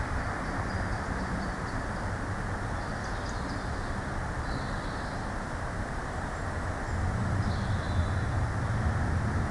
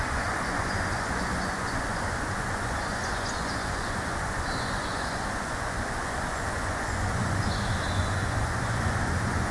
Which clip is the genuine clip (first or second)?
first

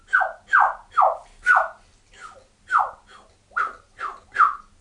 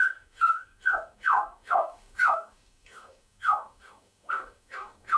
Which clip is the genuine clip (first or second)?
first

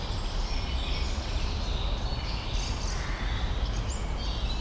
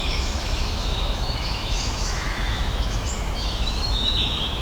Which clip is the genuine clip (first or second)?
first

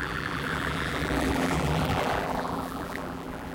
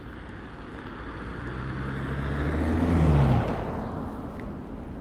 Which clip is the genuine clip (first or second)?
second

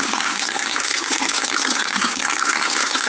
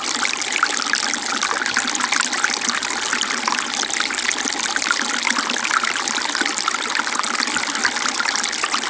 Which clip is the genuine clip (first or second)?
second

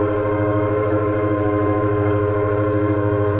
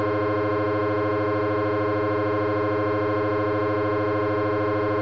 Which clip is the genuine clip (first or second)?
second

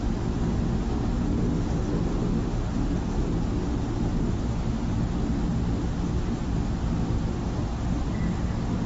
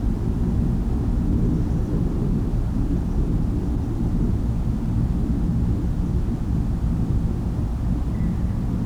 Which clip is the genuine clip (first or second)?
first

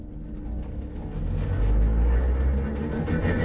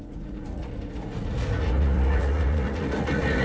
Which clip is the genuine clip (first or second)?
first